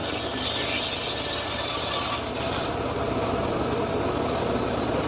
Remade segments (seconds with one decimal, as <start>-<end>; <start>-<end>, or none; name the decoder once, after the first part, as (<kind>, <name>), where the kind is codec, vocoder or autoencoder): none